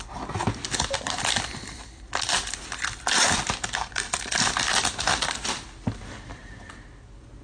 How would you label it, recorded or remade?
recorded